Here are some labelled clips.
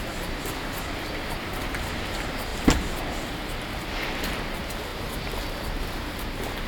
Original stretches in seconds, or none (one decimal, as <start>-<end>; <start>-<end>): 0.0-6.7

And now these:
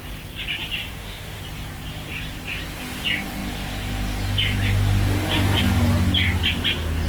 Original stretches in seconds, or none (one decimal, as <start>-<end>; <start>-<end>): 0.0-0.8; 1.4-7.1

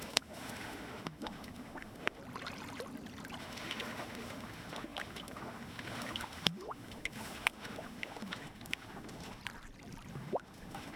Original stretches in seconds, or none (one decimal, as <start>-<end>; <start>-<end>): 2.2-3.4; 9.4-10.1

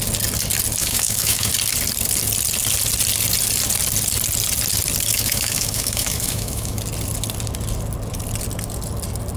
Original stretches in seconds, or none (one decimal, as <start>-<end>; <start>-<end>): 0.0-0.8; 1.5-5.1; 6.8-9.4